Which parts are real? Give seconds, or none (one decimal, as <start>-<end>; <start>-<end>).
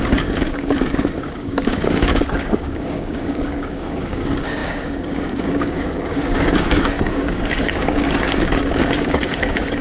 none